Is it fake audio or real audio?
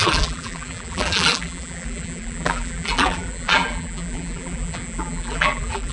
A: fake